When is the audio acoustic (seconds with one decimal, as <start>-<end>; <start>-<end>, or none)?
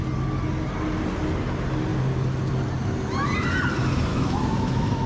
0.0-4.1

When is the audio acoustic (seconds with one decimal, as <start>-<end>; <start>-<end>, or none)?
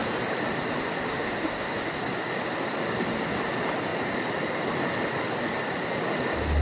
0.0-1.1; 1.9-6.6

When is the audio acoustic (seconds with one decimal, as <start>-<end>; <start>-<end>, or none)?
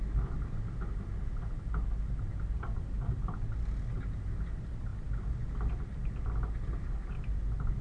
0.0-7.8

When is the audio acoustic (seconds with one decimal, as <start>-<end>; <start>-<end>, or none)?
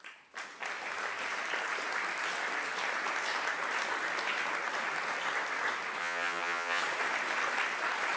0.0-6.0; 6.8-8.2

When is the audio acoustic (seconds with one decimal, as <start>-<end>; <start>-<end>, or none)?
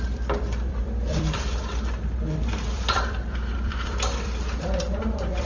1.6-2.7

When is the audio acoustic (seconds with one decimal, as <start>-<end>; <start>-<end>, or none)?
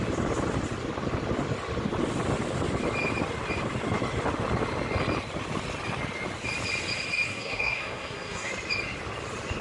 0.0-7.3; 8.5-9.6